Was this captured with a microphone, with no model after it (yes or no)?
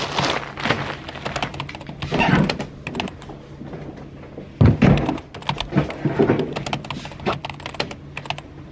yes